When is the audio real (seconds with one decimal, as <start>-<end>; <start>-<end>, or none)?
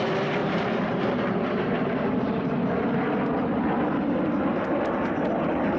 0.0-0.4; 2.6-5.8